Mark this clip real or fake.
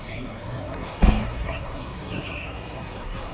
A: fake